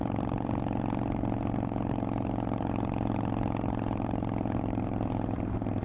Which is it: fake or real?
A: fake